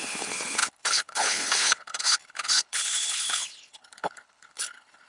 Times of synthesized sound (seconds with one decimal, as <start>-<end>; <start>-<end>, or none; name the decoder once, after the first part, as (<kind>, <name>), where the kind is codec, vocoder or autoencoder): 0.0-5.1 (codec, HILCodec)